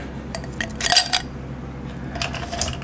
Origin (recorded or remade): recorded